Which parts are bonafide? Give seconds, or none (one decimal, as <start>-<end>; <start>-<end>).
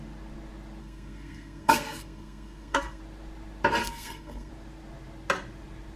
0.0-0.8; 3.0-3.8; 4.5-6.0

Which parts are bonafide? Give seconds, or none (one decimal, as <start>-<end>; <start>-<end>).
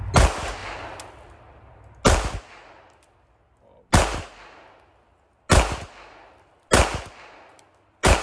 0.0-8.2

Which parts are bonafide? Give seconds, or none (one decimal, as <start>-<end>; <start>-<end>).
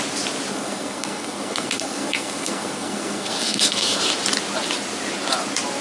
0.0-0.5; 4.0-5.8